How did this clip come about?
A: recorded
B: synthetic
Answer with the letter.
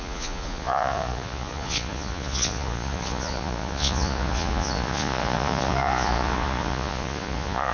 B